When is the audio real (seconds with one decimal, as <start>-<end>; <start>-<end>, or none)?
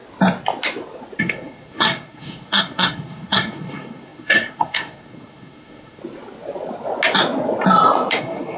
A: 0.0-1.2; 6.0-8.2